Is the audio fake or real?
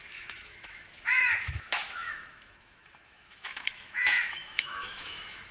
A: fake